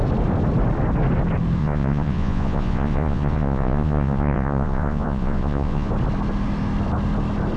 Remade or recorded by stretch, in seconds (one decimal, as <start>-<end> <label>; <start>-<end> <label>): 0.0-1.6 recorded; 1.6-5.9 remade; 5.9-7.6 recorded